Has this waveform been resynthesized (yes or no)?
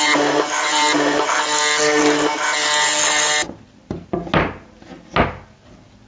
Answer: no